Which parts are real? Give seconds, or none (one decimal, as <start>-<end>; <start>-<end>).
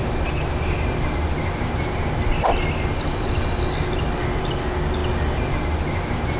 0.0-6.4